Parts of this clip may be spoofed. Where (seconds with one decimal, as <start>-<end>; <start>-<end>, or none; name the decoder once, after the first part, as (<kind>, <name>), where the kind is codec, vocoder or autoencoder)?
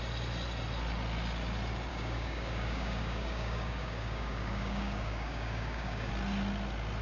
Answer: 1.9-6.1 (codec, DAC)